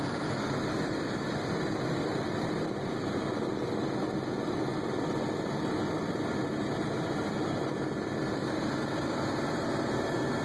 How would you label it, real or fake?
real